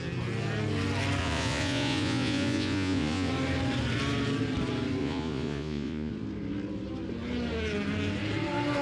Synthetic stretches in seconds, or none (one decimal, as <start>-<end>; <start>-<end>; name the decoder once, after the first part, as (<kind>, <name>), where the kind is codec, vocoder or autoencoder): 1.2-3.3 (vocoder, Vocos); 5.0-6.1